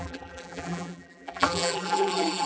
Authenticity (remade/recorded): remade